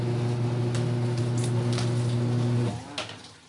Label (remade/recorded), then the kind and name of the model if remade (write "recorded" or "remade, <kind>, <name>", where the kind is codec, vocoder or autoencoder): recorded